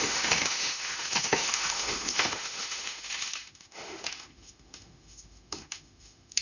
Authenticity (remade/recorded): remade